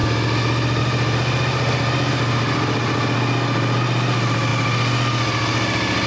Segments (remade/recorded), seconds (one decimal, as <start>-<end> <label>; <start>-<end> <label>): 0.0-6.1 recorded